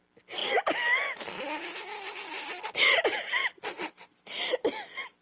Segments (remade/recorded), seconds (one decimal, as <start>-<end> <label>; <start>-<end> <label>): 0.0-5.2 recorded